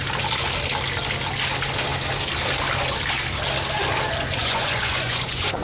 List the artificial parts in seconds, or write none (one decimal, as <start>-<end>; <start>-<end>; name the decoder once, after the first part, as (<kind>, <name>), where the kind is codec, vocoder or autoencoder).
4.4-5.6 (vocoder, Vocos)